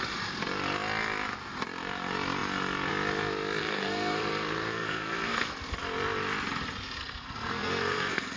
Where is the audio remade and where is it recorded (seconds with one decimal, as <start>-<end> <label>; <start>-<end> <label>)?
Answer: 0.0-3.6 recorded; 3.6-5.5 remade; 5.5-7.0 recorded; 7.0-8.4 remade